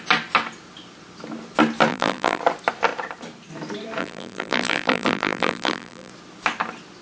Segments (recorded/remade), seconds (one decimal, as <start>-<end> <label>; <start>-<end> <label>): 0.0-1.9 recorded; 1.9-2.4 remade; 2.4-4.0 recorded; 4.0-6.1 remade; 6.1-7.0 recorded